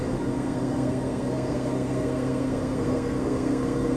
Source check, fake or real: fake